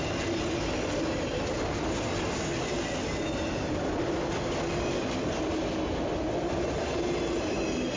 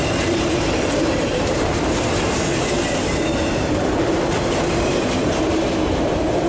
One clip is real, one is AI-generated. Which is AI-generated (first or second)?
second